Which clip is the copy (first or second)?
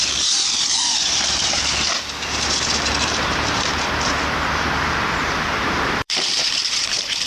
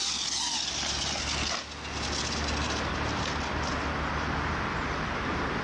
first